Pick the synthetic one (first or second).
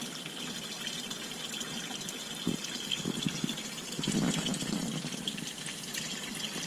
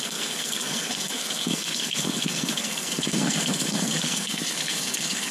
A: second